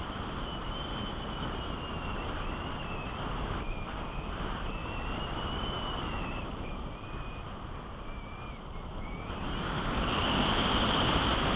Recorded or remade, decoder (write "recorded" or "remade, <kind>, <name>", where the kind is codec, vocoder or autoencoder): recorded